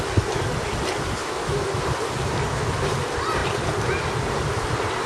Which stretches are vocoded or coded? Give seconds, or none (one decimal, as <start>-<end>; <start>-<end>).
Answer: 1.2-1.8